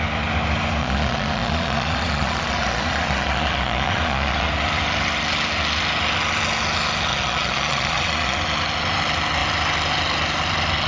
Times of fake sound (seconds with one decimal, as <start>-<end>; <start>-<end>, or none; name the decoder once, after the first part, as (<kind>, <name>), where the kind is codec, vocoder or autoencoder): 0.8-4.5 (vocoder, Vocos); 7.1-8.4